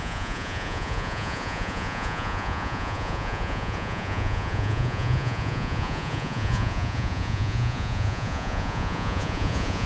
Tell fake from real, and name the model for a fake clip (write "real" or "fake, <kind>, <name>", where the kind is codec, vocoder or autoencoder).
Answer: fake, vocoder, Vocos